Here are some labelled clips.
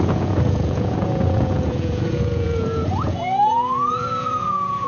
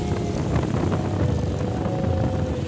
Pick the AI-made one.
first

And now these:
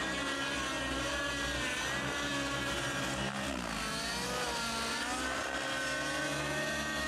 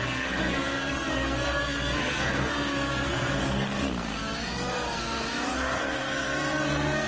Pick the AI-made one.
second